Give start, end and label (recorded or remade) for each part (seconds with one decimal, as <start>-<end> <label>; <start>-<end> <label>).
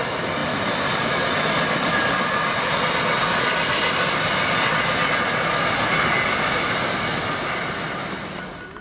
0.0-0.4 recorded; 0.4-2.6 remade; 2.6-8.8 recorded